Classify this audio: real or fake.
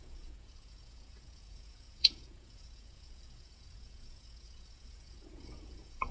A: fake